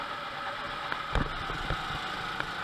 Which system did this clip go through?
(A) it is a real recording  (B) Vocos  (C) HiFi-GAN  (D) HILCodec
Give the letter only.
A